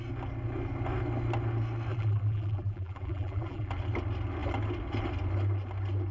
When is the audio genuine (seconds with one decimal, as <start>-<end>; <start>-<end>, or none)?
0.0-1.9; 3.7-6.1